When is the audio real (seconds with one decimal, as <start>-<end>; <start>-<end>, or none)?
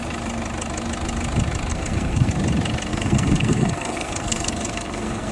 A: 0.0-1.7; 2.3-2.9